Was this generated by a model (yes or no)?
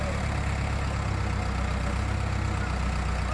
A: no